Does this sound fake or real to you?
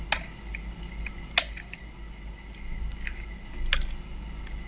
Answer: real